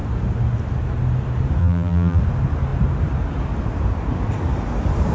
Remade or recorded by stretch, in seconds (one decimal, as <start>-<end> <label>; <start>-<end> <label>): 0.0-1.6 recorded; 1.6-2.2 remade; 2.2-5.1 recorded